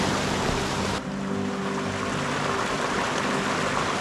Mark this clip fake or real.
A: real